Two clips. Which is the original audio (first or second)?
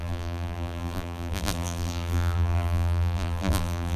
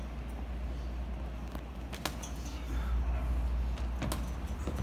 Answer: second